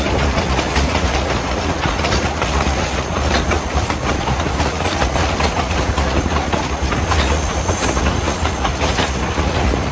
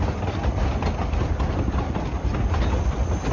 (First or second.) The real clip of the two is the second